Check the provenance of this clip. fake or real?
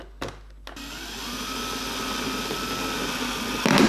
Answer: real